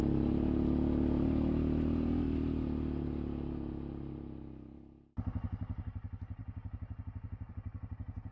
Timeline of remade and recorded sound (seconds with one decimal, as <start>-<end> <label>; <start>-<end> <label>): 0.0-8.3 recorded